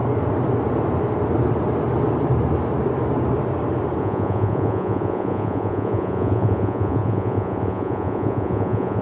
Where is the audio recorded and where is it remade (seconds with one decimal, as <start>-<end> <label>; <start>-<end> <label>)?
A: 0.0-4.0 recorded; 4.0-9.0 remade

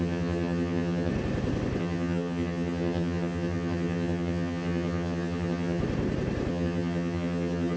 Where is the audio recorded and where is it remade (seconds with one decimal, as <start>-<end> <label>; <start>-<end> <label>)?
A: 0.0-1.1 remade; 1.1-1.8 recorded; 1.8-5.8 remade; 5.8-6.5 recorded; 6.5-7.8 remade

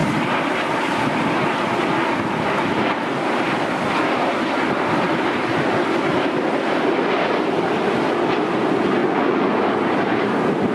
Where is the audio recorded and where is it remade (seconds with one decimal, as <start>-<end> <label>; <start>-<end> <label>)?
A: 0.0-9.0 recorded; 9.0-9.5 remade; 9.5-10.7 recorded

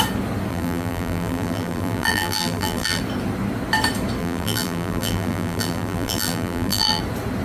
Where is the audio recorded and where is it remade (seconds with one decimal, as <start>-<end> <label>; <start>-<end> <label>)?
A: 0.0-0.5 recorded; 0.5-3.0 remade; 3.0-4.2 recorded; 4.2-7.0 remade; 7.0-7.4 recorded